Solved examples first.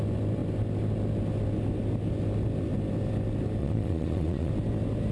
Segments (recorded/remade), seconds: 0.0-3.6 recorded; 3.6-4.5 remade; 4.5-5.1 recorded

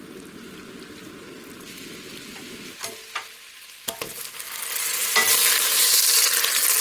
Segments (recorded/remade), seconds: 0.0-6.8 recorded

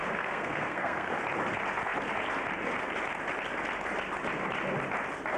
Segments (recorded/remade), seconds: 0.0-1.2 remade; 1.2-5.4 recorded

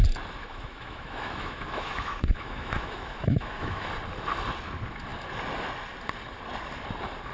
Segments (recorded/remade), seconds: 0.0-0.4 recorded; 0.4-3.9 remade; 3.9-7.3 recorded